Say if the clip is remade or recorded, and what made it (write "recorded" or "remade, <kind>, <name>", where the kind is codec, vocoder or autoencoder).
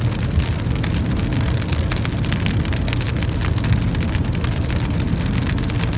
recorded